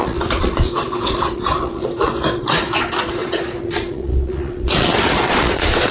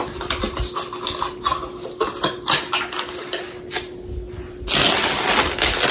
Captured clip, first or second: second